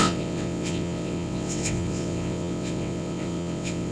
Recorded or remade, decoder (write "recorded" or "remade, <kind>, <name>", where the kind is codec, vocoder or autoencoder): remade, vocoder, WaveNeXt